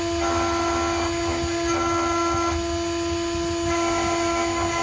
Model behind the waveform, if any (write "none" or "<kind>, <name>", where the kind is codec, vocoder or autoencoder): none